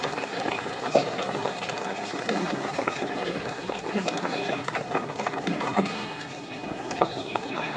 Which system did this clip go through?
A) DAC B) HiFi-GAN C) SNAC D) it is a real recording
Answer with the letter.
C